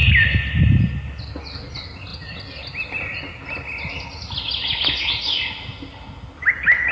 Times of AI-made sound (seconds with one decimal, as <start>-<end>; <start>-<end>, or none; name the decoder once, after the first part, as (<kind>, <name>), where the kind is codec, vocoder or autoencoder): none